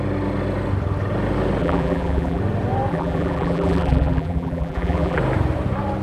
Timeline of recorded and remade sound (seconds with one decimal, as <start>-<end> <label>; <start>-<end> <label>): 0.0-1.6 recorded; 1.6-2.4 remade; 2.4-2.9 recorded; 2.9-5.2 remade; 5.2-6.0 recorded